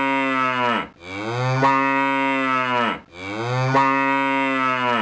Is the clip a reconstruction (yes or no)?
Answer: no